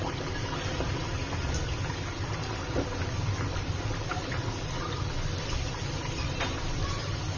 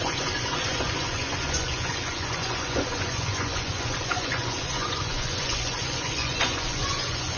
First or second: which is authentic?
first